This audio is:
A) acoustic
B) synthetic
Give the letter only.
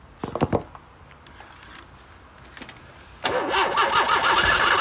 A